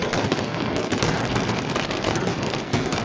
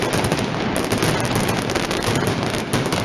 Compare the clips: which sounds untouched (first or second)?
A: second